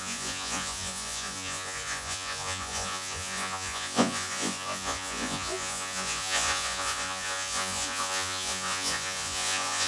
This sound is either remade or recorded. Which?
remade